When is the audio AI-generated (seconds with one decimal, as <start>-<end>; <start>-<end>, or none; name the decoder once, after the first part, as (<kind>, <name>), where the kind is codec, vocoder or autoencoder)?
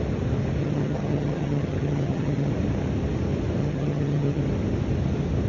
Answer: 0.6-2.5 (vocoder, HiFi-GAN); 3.6-4.4